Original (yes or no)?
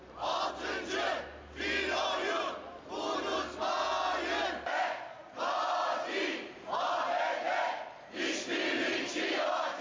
yes